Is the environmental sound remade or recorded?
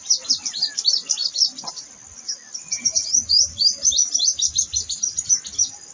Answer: recorded